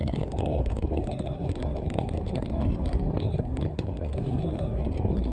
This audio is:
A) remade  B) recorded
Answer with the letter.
A